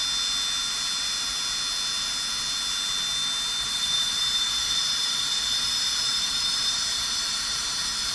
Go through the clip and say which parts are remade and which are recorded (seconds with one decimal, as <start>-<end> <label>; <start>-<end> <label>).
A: 0.0-3.6 recorded; 3.6-8.1 remade